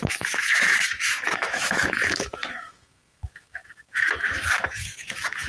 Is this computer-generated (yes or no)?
yes